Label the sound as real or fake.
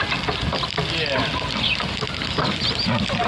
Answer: real